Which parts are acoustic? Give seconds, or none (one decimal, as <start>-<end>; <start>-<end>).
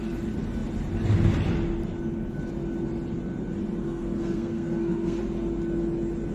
0.0-3.8; 5.2-6.3